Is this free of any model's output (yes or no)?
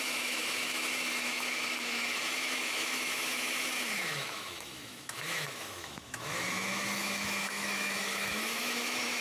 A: no